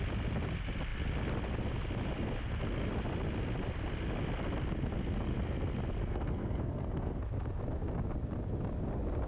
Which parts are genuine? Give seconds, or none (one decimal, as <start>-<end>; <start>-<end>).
0.0-6.0; 7.2-9.3